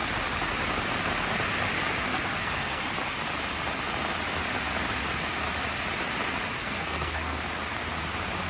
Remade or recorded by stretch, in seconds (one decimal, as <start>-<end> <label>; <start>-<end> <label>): 0.0-2.1 recorded; 2.1-2.9 remade; 2.9-6.6 recorded; 6.6-7.4 remade; 7.4-8.5 recorded